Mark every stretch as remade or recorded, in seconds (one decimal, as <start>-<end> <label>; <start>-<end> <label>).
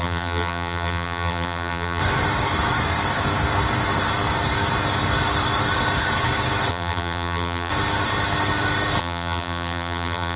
0.0-2.0 remade; 2.0-6.7 recorded; 6.7-7.7 remade; 7.7-9.0 recorded; 9.0-10.4 remade